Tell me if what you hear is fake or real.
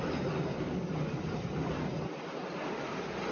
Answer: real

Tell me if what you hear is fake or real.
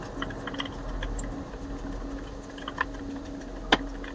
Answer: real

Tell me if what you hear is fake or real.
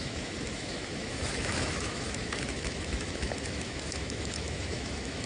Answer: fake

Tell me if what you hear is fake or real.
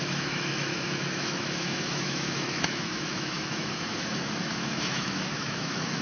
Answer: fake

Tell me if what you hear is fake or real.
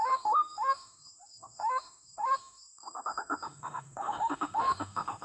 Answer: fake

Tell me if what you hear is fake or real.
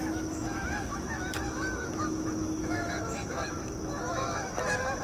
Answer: fake